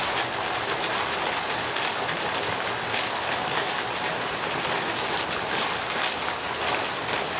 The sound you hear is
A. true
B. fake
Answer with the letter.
A